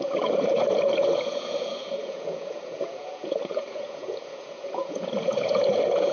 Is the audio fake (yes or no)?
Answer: yes